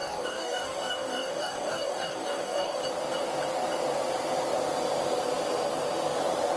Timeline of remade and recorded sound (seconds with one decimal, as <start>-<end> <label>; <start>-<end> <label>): 0.0-2.8 remade; 2.8-6.6 recorded